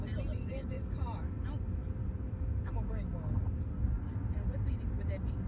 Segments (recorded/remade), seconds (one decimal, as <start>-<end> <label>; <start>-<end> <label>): 0.0-5.5 recorded